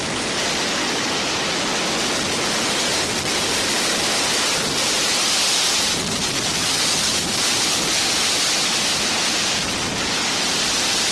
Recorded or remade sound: recorded